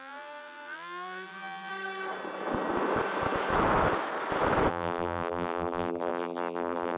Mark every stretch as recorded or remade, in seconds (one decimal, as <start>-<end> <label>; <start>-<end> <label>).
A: 0.0-1.7 remade; 1.7-4.7 recorded; 4.7-7.0 remade